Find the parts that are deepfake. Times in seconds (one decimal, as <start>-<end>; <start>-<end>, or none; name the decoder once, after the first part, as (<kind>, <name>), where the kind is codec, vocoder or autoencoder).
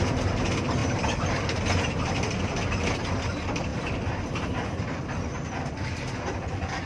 none